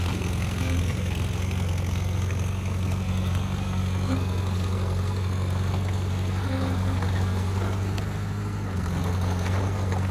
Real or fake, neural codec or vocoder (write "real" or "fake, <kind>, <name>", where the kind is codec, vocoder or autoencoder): fake, codec, SNAC